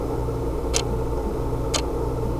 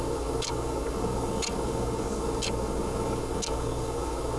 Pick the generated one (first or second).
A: second